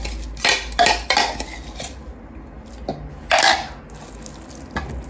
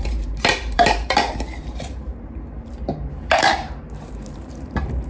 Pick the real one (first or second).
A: first